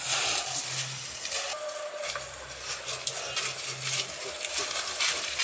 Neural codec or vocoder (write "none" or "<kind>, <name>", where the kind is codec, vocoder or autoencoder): none